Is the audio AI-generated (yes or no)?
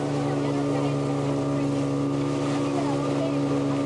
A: no